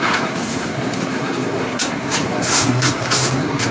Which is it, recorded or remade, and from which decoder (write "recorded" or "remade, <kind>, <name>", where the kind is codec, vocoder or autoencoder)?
remade, codec, SNAC